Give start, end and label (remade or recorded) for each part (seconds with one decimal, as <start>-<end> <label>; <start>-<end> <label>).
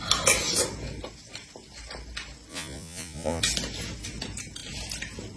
0.0-2.5 recorded; 2.5-3.4 remade; 3.4-5.4 recorded